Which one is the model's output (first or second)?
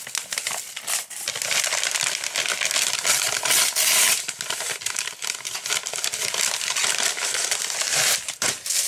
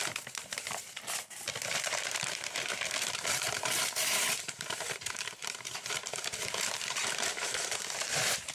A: second